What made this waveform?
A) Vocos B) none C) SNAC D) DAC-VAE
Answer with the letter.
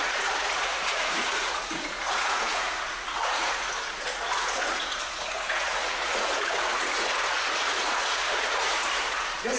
A